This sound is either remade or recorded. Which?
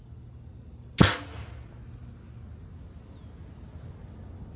recorded